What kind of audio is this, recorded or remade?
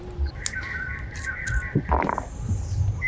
recorded